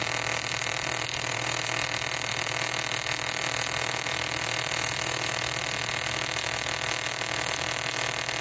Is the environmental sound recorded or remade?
remade